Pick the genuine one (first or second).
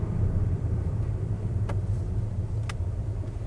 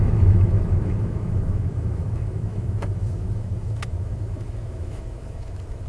first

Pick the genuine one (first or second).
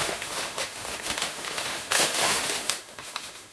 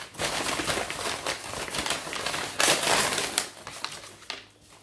second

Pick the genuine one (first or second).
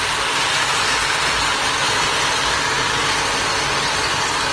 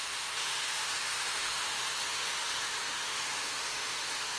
first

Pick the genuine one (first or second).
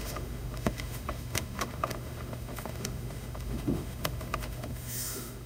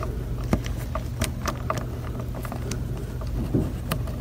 second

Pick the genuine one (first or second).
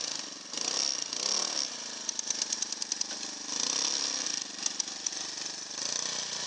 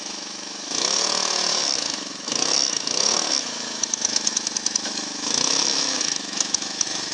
first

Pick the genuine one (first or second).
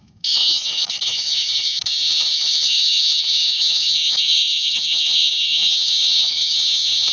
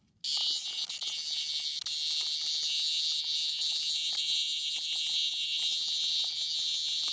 second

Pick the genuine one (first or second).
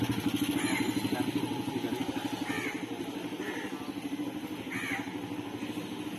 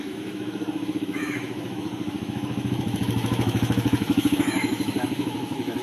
first